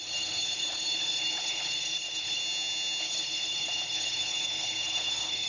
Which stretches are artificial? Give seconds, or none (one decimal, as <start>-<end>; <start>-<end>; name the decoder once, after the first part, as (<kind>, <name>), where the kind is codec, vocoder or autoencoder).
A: 0.0-2.4 (codec, HILCodec); 3.0-5.5